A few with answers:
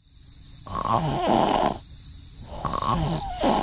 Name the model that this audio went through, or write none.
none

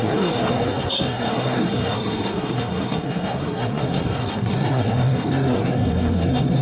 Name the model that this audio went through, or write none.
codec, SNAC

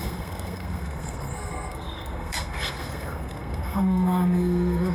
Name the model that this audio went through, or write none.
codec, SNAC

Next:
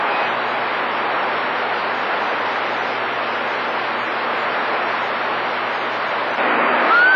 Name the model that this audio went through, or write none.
none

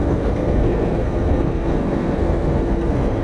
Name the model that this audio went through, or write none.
codec, SNAC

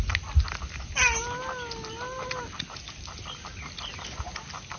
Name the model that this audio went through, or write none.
none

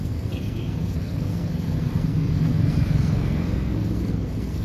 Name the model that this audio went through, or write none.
codec, SNAC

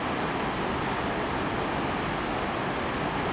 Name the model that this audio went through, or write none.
none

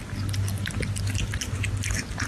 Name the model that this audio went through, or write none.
none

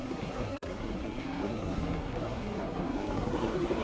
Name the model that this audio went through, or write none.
codec, SNAC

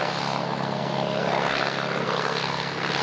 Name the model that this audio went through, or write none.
codec, SNAC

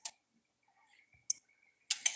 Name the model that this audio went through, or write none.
none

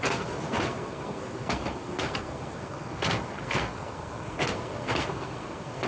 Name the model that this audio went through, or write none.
codec, SNAC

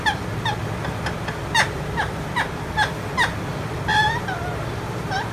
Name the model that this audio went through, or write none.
none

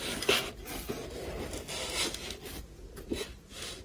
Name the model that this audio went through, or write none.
none